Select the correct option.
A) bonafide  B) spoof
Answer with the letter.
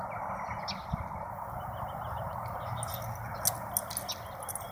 A